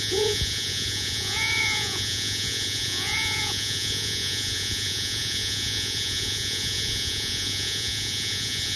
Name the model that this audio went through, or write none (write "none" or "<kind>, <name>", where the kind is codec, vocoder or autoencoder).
vocoder, Vocos